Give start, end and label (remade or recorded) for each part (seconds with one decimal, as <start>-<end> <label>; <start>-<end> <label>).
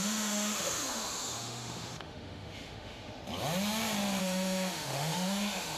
0.0-3.2 remade; 3.2-4.2 recorded; 4.2-5.8 remade